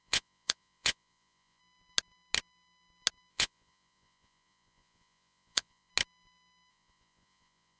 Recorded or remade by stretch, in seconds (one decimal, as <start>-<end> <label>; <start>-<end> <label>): 0.0-1.6 remade; 1.6-3.3 recorded; 3.3-5.9 remade; 5.9-6.7 recorded; 6.7-7.8 remade